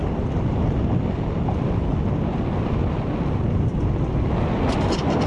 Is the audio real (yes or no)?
yes